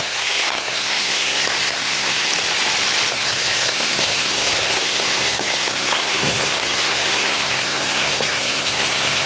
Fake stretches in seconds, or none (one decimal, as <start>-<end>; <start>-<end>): 0.0-2.3; 3.1-9.3

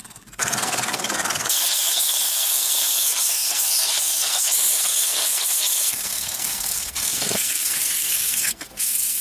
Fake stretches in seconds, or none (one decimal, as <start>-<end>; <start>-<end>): 0.0-9.2

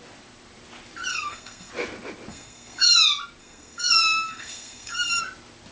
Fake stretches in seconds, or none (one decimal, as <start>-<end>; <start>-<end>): 1.1-1.7; 2.3-3.0; 3.4-5.2

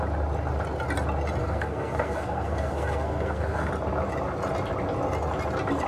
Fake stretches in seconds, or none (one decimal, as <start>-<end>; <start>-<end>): 1.4-3.7